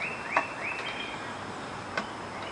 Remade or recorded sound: recorded